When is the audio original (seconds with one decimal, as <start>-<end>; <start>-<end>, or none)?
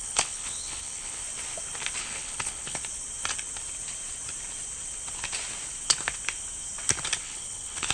1.2-2.0; 2.8-7.2